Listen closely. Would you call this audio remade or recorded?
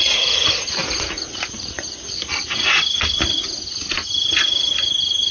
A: recorded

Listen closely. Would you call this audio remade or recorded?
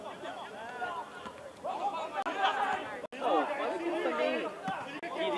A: recorded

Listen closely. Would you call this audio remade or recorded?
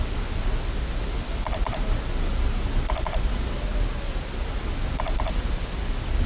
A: recorded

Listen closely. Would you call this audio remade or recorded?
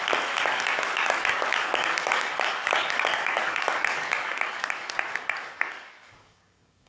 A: remade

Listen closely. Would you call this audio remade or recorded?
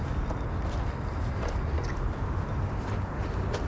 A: recorded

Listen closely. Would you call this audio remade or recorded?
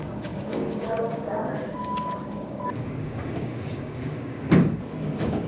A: remade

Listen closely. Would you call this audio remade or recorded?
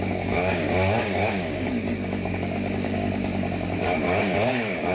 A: remade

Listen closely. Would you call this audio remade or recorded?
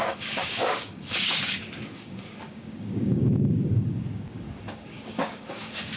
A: remade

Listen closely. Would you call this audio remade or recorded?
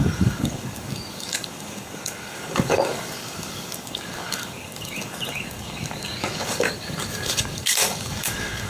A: remade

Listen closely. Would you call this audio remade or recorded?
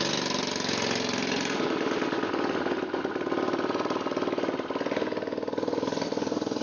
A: recorded